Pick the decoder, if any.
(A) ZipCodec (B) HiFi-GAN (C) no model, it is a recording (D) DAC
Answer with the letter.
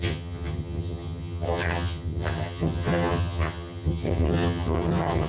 B